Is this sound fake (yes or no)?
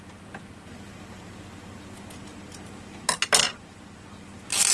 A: no